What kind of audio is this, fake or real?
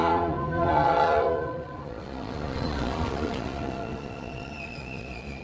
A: fake